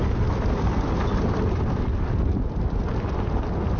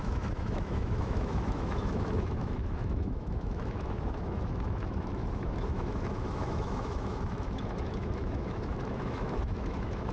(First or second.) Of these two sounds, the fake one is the second